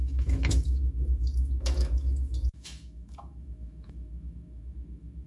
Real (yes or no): no